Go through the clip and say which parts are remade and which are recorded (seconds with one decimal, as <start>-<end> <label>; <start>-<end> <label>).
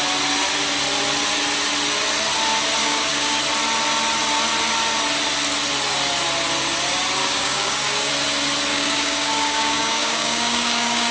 0.0-2.8 recorded; 2.8-3.4 remade; 3.4-7.2 recorded; 7.2-8.1 remade; 8.1-8.7 recorded; 8.7-11.1 remade